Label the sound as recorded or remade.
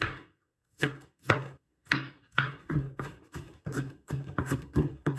remade